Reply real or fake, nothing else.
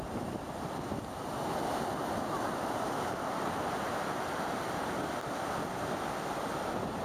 fake